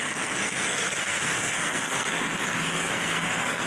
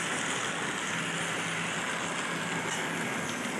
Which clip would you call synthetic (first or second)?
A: first